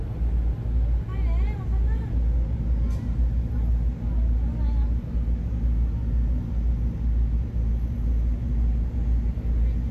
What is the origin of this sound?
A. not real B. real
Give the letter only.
B